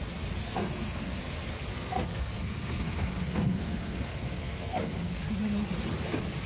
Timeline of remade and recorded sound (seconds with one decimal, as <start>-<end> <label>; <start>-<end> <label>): 0.0-0.4 recorded; 0.4-1.2 remade; 1.2-1.7 recorded; 1.7-5.3 remade; 5.3-6.5 recorded